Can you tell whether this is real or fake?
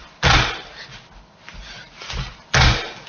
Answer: real